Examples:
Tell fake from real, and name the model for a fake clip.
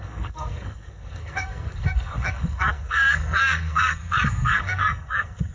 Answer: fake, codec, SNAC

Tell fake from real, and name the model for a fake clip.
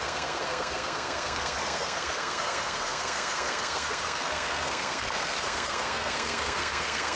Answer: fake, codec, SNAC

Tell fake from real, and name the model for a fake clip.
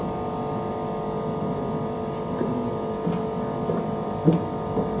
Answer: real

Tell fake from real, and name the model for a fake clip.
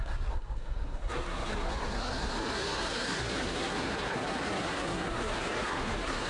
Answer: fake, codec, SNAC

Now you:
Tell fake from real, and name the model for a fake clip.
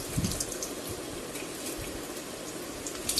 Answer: real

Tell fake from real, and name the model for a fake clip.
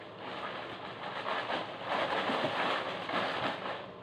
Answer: real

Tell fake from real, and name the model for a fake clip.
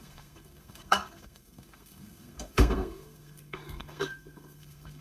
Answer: fake, codec, SNAC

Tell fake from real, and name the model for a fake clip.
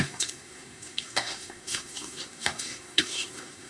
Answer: fake, codec, SNAC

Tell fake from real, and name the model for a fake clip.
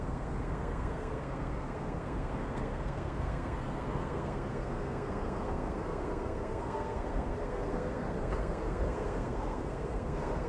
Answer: fake, codec, SNAC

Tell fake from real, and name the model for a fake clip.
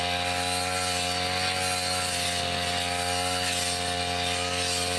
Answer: real